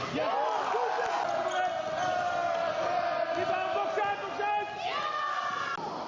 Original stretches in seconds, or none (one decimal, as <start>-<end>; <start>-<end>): 0.0-6.1